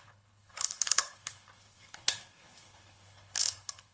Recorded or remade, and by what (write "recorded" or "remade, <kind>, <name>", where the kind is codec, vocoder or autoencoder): remade, codec, HILCodec